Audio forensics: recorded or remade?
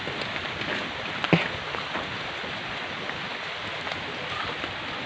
recorded